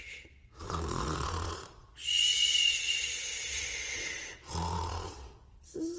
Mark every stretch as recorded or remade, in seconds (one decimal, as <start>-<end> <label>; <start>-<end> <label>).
0.0-6.0 remade